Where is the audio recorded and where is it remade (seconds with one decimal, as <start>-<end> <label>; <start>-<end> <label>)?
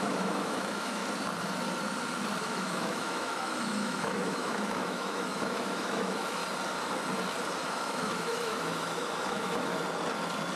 0.0-1.0 remade; 1.0-2.4 recorded; 2.4-6.4 remade; 6.4-7.7 recorded; 7.7-9.7 remade; 9.7-10.6 recorded